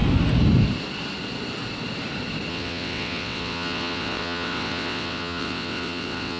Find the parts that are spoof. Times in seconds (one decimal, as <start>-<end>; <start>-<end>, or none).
2.5-6.4